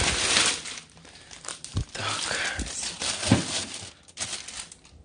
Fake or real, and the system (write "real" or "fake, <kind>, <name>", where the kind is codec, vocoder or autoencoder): real